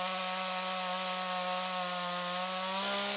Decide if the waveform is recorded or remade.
recorded